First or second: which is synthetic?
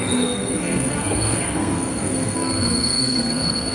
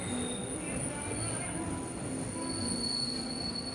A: first